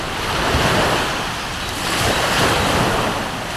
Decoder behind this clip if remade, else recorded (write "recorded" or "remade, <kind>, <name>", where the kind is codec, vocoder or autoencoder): recorded